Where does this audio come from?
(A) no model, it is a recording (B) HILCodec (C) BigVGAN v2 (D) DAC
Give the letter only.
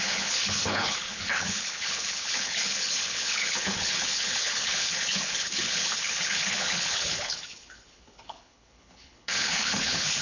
B